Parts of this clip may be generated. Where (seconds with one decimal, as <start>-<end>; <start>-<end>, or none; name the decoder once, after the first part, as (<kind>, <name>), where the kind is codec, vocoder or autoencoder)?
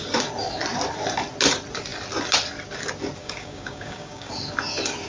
3.2-4.3 (codec, DAC)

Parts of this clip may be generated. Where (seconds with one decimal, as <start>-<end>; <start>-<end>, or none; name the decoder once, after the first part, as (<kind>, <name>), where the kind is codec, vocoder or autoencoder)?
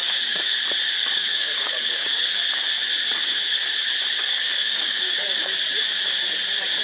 0.0-0.6 (codec, DAC); 1.0-2.4; 4.1-5.5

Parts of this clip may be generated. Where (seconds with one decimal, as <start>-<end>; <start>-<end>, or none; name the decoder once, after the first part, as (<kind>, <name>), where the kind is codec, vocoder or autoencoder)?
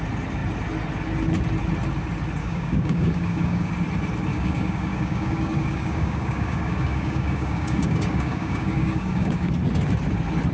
2.4-3.7 (codec, DAC); 4.3-9.5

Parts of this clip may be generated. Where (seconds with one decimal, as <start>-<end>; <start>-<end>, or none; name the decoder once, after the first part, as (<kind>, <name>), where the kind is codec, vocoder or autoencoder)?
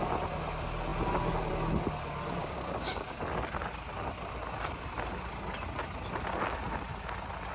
2.4-3.2 (codec, DAC)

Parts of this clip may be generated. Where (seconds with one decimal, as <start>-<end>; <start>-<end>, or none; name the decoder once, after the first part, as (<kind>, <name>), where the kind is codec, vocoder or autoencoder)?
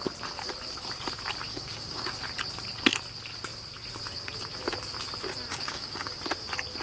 1.5-2.1 (codec, DAC); 5.5-6.2